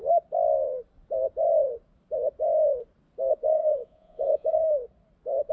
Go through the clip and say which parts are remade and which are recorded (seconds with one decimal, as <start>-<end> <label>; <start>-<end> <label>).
0.0-3.3 recorded; 3.3-4.6 remade; 4.6-5.5 recorded